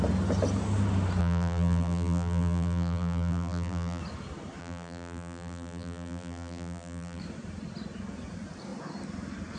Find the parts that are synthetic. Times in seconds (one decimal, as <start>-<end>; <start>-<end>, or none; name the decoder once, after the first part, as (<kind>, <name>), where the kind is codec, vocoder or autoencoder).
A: 1.2-4.0 (vocoder, BigVGAN v2); 4.6-7.2